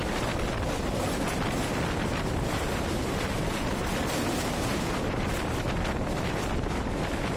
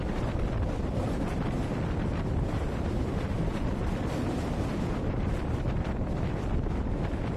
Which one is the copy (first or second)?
second